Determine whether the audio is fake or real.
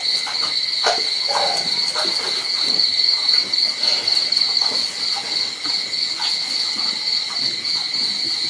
real